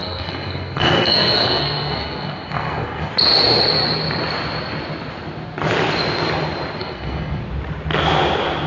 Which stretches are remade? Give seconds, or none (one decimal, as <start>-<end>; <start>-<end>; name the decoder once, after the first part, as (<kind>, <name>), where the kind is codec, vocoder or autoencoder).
0.0-3.1 (codec, SNAC); 6.8-7.4